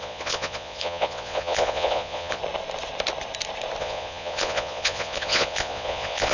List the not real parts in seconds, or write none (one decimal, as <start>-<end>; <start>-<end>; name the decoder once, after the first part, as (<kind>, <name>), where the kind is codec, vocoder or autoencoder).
0.0-2.4 (vocoder, Vocos); 3.8-6.3